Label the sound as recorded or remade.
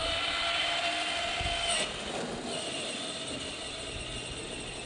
recorded